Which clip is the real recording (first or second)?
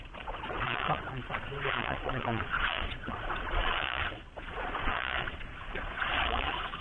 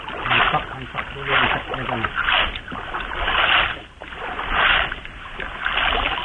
second